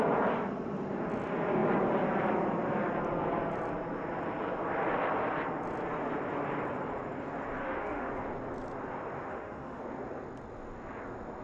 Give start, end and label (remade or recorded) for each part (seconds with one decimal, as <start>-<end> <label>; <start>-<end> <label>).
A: 0.0-7.6 recorded; 7.6-8.1 remade; 8.1-9.3 recorded; 9.3-9.8 remade; 9.8-11.4 recorded